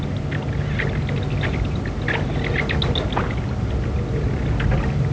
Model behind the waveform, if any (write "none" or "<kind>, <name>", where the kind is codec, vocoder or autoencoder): none